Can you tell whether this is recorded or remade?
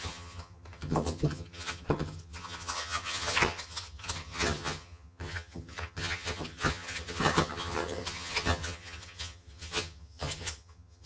remade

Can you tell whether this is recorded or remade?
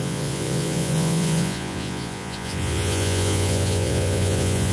remade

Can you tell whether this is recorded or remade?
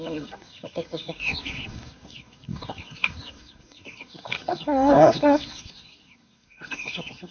remade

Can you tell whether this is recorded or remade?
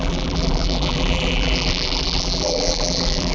remade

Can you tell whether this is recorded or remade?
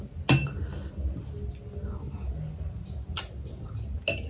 recorded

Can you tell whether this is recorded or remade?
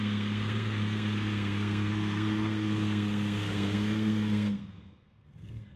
remade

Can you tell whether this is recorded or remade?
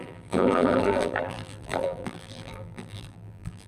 remade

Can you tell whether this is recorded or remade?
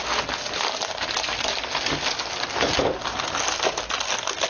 recorded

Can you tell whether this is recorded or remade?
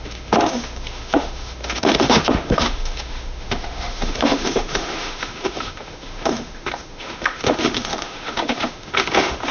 remade